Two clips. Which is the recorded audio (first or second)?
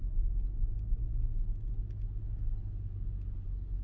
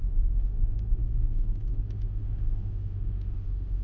first